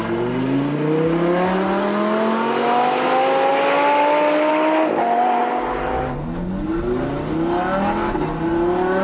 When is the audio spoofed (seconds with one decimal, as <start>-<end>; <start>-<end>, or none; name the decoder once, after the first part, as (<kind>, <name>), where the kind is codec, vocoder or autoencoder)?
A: none